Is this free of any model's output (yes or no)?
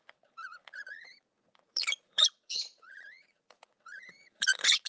no